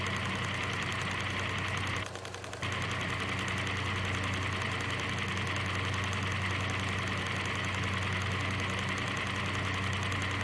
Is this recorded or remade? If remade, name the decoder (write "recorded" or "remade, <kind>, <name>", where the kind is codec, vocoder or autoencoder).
recorded